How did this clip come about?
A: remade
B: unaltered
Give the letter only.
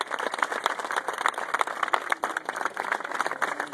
B